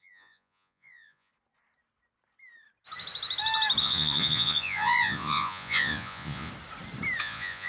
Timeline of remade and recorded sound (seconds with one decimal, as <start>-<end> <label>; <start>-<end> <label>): 0.0-1.3 remade; 1.3-3.8 recorded; 3.8-6.5 remade; 6.5-7.2 recorded; 7.2-7.7 remade